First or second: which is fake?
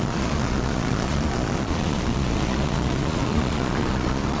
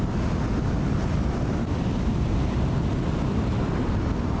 first